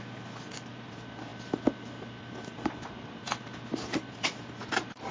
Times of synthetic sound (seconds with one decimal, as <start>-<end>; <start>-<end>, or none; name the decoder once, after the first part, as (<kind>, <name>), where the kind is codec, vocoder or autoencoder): none